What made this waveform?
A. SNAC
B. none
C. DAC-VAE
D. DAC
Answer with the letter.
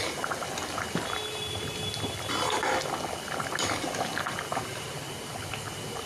B